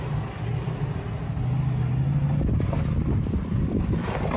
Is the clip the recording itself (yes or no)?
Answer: yes